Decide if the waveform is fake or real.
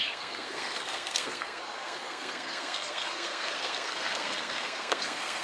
fake